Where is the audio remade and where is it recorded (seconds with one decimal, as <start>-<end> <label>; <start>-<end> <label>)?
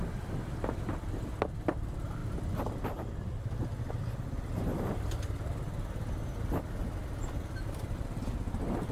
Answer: 0.0-8.9 recorded